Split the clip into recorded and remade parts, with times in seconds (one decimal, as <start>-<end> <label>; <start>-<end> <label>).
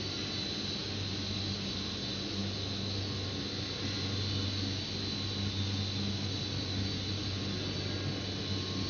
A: 0.0-8.9 recorded